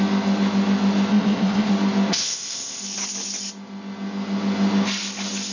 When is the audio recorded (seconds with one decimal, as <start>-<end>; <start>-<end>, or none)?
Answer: 0.0-1.1; 1.7-2.1; 2.8-5.5